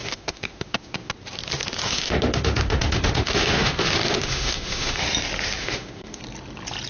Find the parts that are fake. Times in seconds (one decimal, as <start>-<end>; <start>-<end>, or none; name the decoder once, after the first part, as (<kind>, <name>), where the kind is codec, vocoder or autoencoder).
0.0-1.1 (autoencoder, DAC-VAE); 1.8-5.0; 5.6-6.2